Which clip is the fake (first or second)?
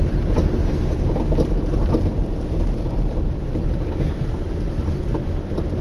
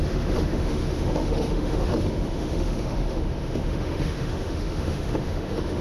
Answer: second